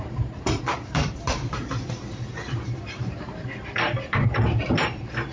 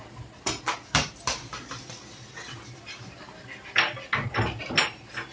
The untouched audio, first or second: second